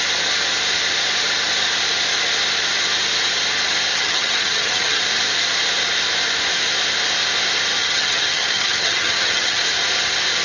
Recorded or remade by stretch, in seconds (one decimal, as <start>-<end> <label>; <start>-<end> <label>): 0.0-3.9 recorded; 3.9-5.0 remade; 5.0-7.8 recorded; 7.8-9.6 remade; 9.6-10.4 recorded